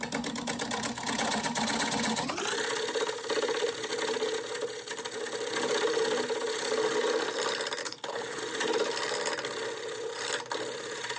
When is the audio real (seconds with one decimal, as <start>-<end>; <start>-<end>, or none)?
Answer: 0.0-7.8; 8.4-11.2